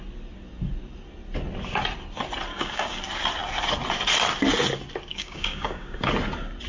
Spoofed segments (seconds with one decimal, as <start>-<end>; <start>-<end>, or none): 2.5-3.0; 5.1-6.1

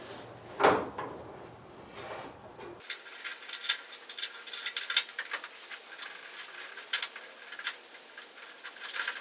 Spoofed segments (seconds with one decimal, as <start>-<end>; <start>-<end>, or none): none